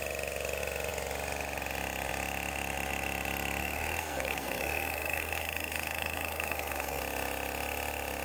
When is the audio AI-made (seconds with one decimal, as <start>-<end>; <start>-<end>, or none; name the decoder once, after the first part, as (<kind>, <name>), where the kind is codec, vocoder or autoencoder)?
3.6-7.0 (codec, SNAC)